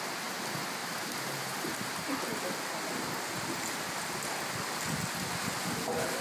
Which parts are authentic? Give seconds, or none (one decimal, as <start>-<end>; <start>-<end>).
0.0-0.8; 1.7-6.2